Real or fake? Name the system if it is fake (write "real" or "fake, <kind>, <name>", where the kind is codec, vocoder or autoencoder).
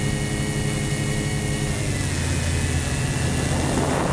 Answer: real